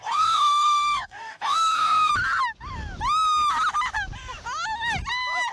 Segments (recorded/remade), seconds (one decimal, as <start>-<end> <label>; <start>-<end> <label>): 0.0-2.1 remade; 2.1-5.5 recorded